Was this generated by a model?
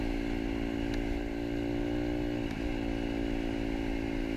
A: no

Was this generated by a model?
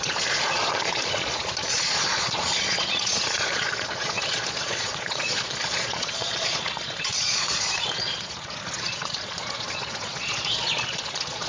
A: yes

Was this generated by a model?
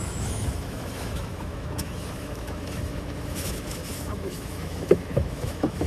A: yes